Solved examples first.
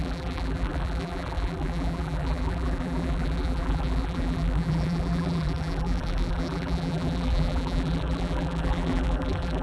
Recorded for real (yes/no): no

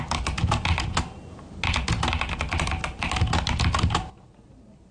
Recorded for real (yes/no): yes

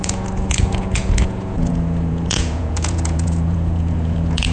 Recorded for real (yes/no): no